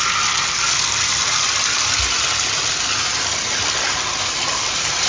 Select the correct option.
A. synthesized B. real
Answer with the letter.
B